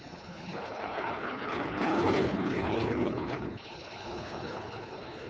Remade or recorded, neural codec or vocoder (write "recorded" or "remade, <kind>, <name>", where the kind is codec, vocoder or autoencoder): remade, codec, HILCodec